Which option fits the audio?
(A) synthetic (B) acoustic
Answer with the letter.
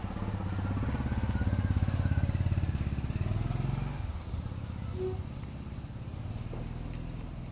B